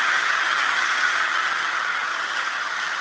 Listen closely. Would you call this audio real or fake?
fake